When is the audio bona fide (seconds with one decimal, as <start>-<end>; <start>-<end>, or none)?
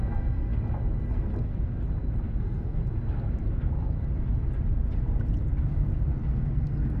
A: 0.5-1.1; 1.5-2.4; 2.8-6.3